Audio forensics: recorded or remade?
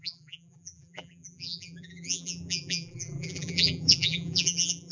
remade